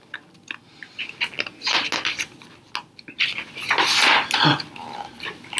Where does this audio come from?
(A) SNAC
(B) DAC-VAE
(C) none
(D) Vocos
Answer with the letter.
C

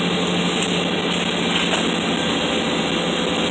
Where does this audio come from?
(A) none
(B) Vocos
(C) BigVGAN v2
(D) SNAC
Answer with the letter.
A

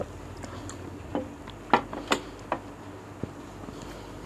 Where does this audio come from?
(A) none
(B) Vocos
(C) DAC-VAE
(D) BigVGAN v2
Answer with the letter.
A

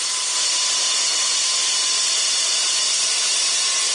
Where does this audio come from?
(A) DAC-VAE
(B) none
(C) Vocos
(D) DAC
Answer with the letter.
B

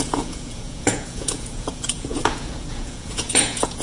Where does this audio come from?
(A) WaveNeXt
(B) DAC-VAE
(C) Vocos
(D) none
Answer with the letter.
C